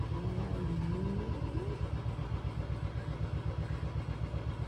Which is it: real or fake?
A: real